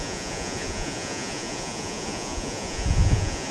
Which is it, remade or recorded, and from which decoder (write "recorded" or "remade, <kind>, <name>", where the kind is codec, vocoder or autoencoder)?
remade, vocoder, Vocos